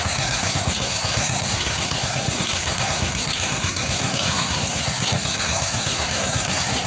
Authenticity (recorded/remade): remade